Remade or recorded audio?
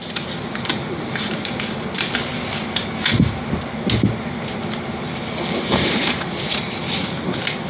recorded